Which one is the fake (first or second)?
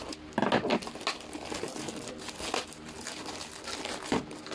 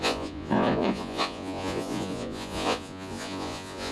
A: second